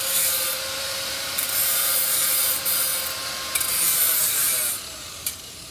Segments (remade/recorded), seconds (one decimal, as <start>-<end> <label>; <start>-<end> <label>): 0.0-2.9 remade; 2.9-3.7 recorded; 3.7-5.7 remade